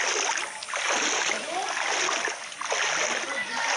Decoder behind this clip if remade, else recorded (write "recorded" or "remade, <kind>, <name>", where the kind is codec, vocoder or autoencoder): recorded